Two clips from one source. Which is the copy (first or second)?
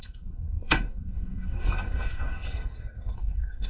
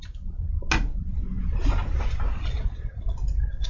first